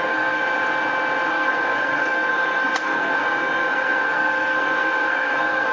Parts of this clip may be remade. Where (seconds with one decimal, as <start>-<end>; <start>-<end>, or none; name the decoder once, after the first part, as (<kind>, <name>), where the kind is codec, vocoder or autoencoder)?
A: 0.0-0.4 (codec, SNAC); 1.3-5.7

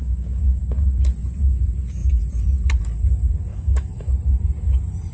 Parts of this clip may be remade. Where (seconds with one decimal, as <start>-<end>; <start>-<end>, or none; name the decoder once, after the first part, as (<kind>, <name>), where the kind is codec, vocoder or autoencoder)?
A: 0.0-0.6 (autoencoder, DAC-VAE); 3.5-4.1

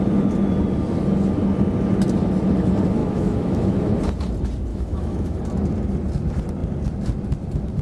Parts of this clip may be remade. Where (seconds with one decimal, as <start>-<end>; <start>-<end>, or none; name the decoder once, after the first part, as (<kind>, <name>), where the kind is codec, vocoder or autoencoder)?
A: 3.0-3.9 (autoencoder, DAC-VAE); 4.7-5.4